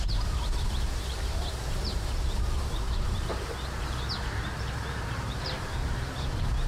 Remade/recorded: remade